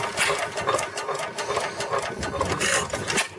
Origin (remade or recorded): recorded